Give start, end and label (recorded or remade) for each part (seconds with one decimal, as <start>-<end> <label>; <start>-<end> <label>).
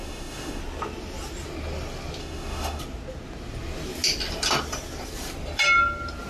0.0-0.6 remade; 0.6-2.2 recorded; 2.2-2.8 remade; 2.8-6.3 recorded